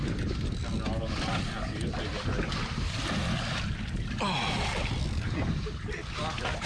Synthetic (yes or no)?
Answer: no